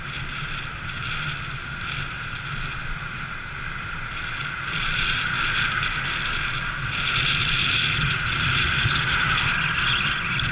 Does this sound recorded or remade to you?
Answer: recorded